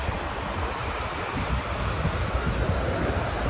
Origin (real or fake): real